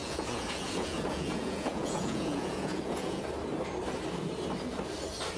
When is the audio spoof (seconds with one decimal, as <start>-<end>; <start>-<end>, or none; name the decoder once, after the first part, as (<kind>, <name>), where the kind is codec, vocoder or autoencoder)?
0.0-3.2 (vocoder, Vocos)